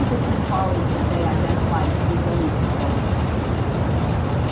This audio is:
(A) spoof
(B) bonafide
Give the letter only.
B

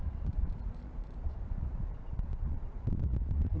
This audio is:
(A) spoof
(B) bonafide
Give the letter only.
A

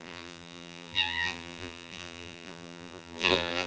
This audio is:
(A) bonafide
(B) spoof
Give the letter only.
B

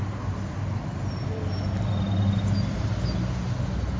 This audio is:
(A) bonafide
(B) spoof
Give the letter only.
A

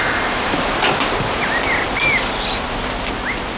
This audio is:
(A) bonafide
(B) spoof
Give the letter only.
A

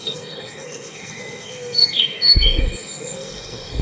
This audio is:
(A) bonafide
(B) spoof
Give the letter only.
B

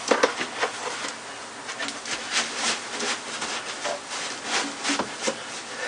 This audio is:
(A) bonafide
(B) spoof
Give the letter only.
A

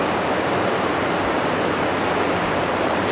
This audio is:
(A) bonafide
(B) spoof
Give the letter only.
B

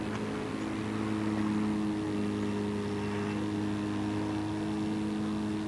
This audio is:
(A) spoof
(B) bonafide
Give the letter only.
B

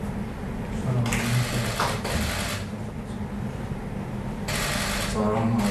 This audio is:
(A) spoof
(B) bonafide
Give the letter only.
B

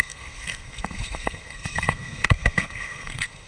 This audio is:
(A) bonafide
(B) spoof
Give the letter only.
B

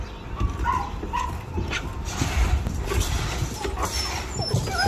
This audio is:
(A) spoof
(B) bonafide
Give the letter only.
B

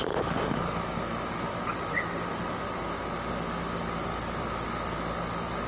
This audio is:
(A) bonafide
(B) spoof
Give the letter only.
A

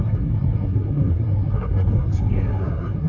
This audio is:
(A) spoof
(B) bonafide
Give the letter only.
A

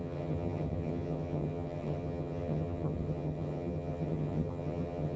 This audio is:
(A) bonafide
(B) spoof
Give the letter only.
B